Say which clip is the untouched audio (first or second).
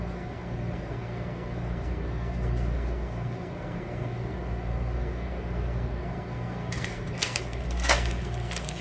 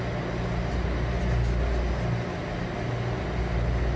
second